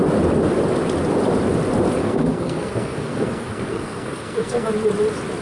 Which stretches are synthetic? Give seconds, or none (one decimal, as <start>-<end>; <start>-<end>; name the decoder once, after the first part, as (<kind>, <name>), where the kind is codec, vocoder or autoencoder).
2.0-4.7 (codec, SNAC)